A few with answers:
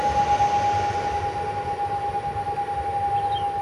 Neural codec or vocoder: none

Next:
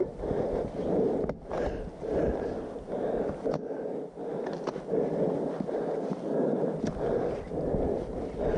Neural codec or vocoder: none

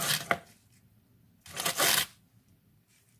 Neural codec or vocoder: none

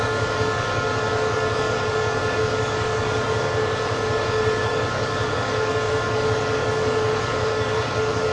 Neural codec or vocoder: codec, DAC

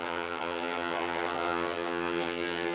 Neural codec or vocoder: vocoder, HiFi-GAN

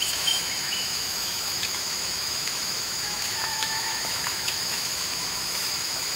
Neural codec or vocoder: autoencoder, DAC-VAE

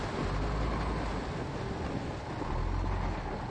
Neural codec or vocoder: none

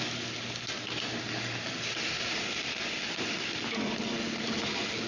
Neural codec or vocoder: none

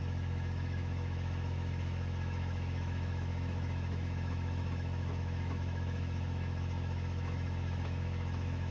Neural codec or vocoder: autoencoder, DAC-VAE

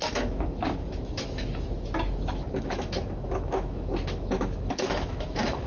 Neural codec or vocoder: autoencoder, DAC-VAE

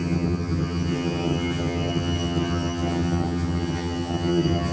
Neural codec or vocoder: vocoder, HiFi-GAN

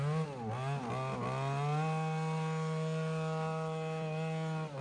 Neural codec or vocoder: none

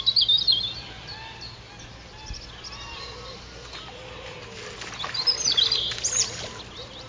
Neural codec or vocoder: none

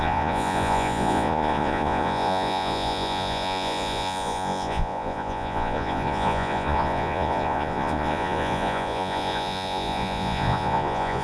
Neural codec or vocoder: vocoder, Vocos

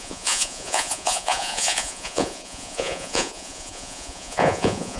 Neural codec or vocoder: vocoder, Vocos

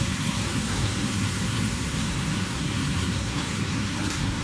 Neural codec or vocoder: codec, SNAC